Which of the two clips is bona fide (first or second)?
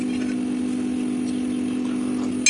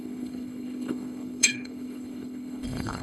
first